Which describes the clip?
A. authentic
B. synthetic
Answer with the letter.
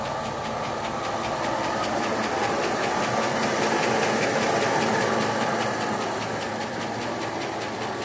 A